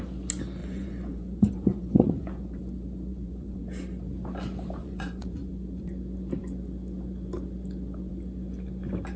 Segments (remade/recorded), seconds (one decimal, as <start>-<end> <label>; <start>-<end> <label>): 0.0-0.6 recorded; 0.6-2.6 remade; 2.6-3.1 recorded; 3.1-3.6 remade; 3.6-4.8 recorded; 4.8-5.5 remade; 5.5-9.2 recorded

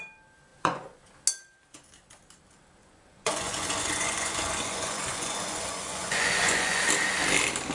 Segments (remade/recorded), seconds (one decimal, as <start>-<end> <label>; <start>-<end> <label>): 0.0-0.5 recorded; 0.5-1.0 remade; 1.0-2.8 recorded; 2.8-6.8 remade; 6.8-7.7 recorded